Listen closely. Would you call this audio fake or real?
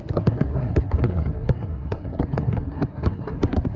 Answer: fake